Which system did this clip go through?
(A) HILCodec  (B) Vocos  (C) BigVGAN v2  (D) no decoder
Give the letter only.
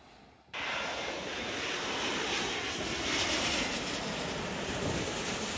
D